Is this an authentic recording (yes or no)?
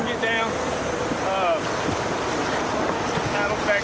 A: yes